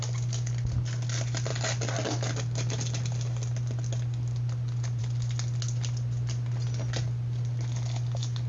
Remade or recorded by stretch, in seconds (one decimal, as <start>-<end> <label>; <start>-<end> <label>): 0.0-8.5 recorded